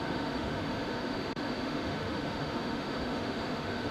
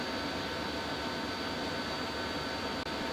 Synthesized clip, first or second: first